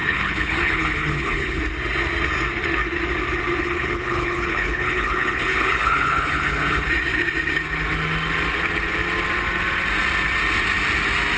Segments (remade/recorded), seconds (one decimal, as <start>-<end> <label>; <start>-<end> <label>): 0.0-1.6 remade; 1.6-3.6 recorded; 3.6-6.9 remade; 6.9-11.4 recorded